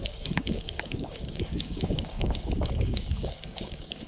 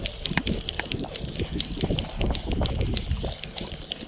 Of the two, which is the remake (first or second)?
first